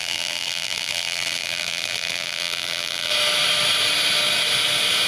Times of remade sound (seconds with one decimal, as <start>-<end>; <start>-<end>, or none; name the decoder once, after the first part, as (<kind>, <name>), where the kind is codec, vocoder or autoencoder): 0.0-3.1 (vocoder, BigVGAN v2)